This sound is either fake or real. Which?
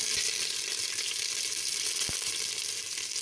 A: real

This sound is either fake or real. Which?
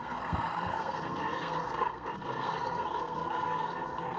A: fake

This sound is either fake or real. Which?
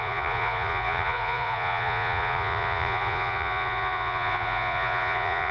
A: fake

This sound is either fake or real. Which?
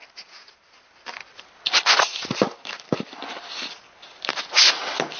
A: real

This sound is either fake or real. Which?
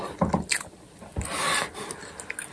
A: real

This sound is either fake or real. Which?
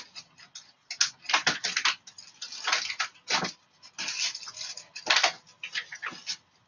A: real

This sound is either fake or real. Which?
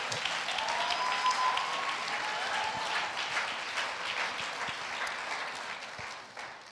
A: real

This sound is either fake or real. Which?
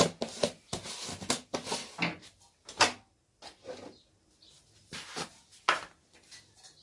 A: real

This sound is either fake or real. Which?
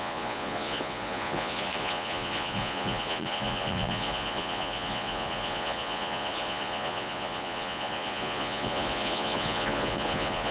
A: fake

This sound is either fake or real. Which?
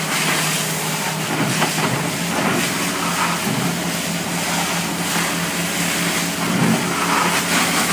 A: real